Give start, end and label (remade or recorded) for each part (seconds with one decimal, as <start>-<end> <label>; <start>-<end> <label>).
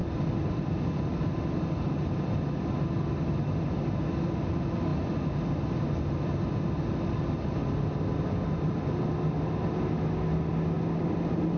0.0-2.5 remade; 2.5-7.6 recorded; 7.6-8.7 remade; 8.7-11.6 recorded